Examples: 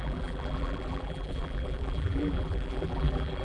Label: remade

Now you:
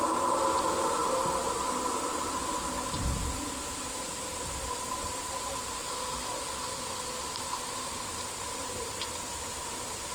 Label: recorded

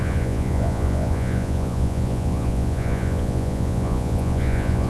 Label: remade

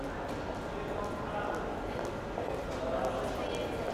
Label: recorded